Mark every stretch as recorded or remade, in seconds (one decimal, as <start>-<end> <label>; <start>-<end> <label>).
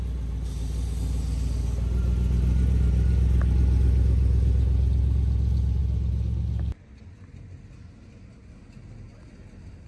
0.0-9.9 recorded